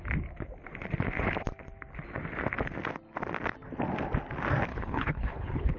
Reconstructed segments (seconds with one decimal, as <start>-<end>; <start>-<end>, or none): 4.7-5.8